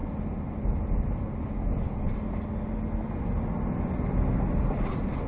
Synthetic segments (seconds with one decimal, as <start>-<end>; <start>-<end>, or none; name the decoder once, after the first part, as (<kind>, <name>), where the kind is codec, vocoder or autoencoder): none